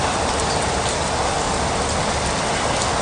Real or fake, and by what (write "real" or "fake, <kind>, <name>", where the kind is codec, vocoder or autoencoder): real